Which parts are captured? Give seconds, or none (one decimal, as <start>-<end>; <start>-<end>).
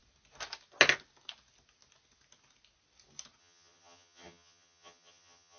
0.0-3.4